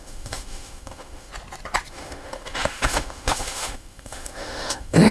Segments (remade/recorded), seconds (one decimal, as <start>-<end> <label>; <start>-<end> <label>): 0.0-1.3 remade; 1.3-1.9 recorded; 1.9-5.1 remade